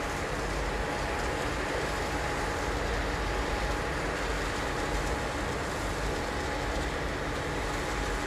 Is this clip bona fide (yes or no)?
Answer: yes